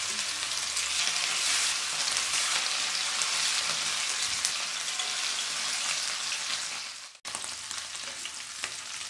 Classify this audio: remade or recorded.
recorded